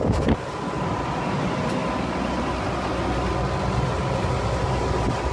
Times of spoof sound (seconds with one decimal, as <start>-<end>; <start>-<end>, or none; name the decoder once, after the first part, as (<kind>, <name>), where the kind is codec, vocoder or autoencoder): none